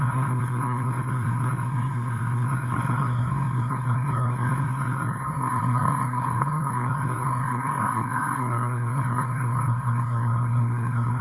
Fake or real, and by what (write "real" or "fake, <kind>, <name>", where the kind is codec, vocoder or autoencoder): fake, codec, SNAC